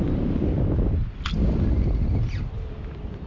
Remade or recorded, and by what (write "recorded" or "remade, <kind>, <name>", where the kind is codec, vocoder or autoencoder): recorded